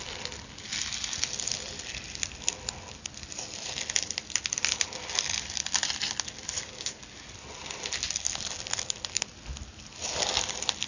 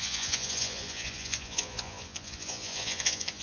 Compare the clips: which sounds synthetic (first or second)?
second